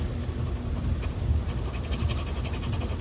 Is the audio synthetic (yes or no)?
no